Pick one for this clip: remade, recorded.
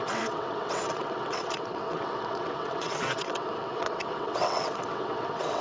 remade